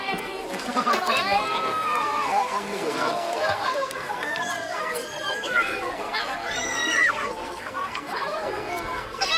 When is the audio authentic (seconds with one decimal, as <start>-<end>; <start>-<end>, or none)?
none